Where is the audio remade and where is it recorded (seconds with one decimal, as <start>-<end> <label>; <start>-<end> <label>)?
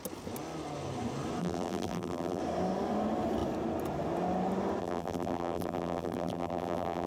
0.0-1.4 recorded; 1.4-2.4 remade; 2.4-4.8 recorded; 4.8-7.1 remade